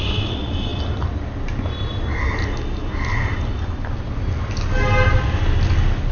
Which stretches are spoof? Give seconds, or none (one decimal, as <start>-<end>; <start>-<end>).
none